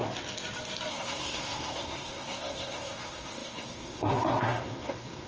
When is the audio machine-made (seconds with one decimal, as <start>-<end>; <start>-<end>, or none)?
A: 0.9-5.3